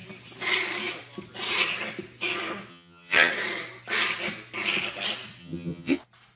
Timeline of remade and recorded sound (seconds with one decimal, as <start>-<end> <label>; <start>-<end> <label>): 0.0-2.7 recorded; 2.7-3.3 remade; 3.3-5.4 recorded; 5.4-6.0 remade; 6.0-6.4 recorded